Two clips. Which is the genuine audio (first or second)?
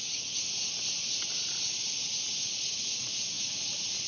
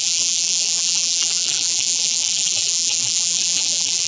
first